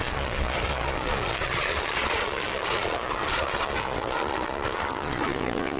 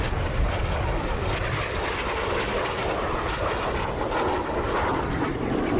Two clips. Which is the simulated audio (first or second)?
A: first